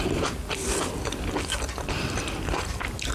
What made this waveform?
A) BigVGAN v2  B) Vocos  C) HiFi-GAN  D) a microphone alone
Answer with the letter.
D